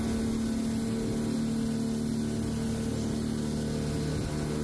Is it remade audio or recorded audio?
recorded